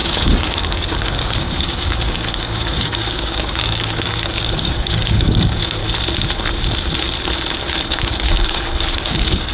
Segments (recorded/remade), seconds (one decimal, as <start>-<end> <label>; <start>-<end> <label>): 0.0-5.8 remade; 5.8-7.6 recorded; 7.6-9.5 remade